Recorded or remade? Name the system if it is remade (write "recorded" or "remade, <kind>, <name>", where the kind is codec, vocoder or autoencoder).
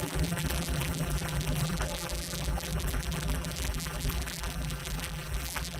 remade, vocoder, BigVGAN v2